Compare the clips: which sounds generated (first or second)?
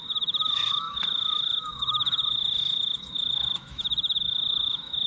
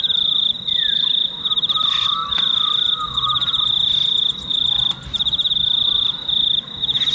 first